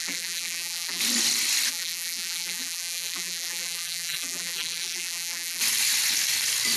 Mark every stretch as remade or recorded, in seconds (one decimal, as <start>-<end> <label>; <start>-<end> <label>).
0.0-1.0 remade; 1.0-1.7 recorded; 1.7-5.6 remade; 5.6-6.8 recorded